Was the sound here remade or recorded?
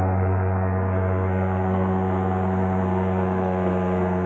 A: remade